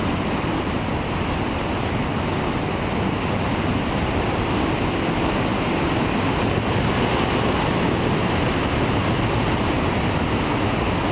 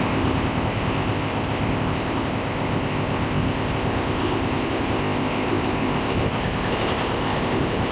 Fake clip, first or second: second